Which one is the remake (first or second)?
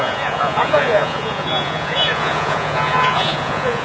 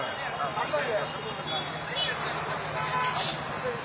first